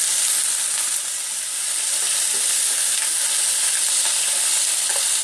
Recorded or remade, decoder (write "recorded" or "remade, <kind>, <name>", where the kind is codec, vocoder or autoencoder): recorded